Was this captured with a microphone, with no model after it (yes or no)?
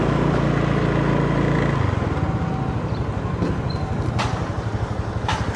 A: yes